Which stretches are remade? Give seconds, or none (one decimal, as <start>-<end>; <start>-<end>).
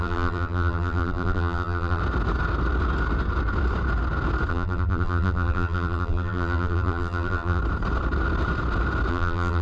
0.0-2.0; 4.5-7.6; 9.1-9.6